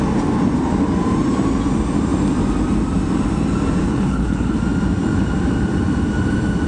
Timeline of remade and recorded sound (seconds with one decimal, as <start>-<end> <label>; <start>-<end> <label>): 0.0-3.8 recorded; 3.8-4.6 remade; 4.6-6.7 recorded